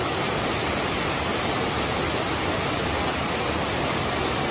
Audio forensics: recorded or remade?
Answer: recorded